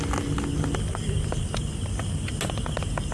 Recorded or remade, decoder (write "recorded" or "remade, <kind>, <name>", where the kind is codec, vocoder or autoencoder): recorded